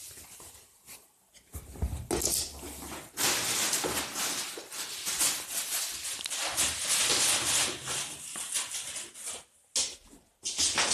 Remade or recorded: recorded